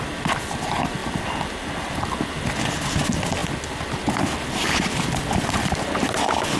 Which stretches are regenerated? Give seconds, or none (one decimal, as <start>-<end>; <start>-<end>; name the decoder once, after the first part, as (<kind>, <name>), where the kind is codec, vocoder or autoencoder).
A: 0.0-3.4 (vocoder, BigVGAN v2); 4.4-6.6